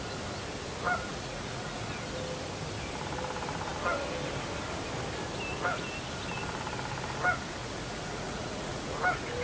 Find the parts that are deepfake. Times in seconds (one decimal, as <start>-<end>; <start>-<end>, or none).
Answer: 1.1-1.9; 7.6-9.0